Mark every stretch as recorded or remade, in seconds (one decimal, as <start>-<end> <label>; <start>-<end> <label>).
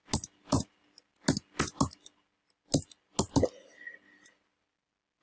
0.0-5.2 recorded